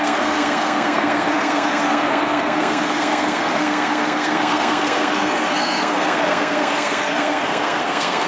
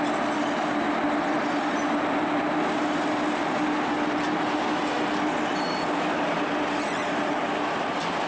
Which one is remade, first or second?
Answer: first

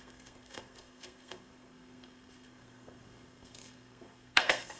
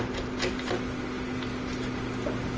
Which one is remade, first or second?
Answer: first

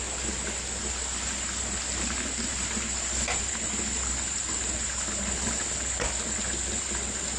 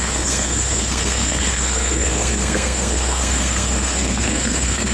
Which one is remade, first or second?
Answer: second